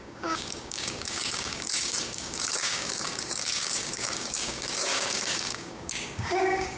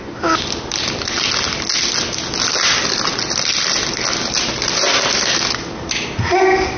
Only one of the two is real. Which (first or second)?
second